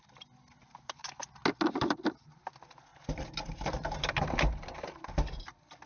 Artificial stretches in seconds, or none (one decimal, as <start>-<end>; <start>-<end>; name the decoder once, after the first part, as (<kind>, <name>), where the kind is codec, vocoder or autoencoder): 0.6-1.2 (vocoder, BigVGAN v2); 2.9-4.9